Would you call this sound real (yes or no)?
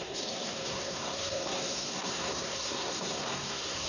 no